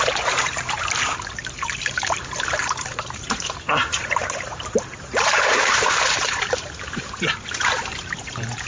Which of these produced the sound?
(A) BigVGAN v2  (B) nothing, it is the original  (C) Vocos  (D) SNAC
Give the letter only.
A